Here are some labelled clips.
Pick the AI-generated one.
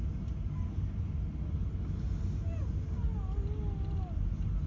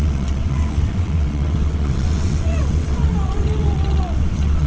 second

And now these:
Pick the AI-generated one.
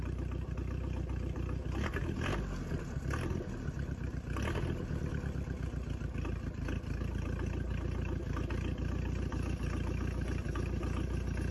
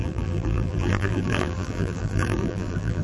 second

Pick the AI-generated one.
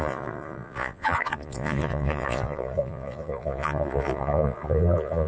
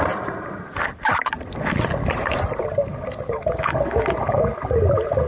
first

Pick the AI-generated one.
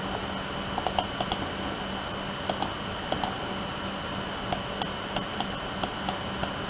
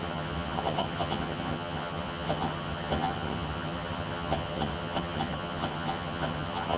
second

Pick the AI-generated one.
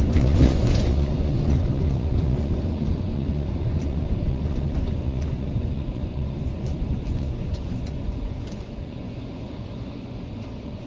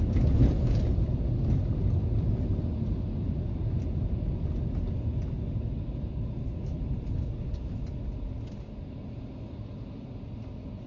first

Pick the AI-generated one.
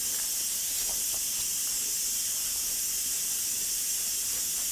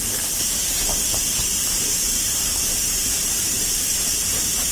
second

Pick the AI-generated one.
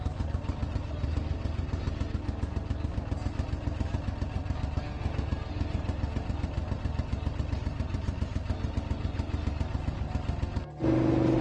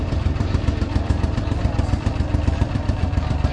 second